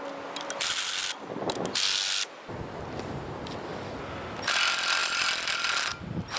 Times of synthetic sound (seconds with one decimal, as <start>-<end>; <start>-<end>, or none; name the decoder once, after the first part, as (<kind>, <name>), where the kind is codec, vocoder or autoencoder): none